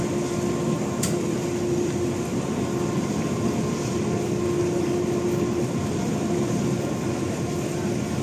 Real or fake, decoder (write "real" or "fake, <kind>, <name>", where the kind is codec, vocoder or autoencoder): real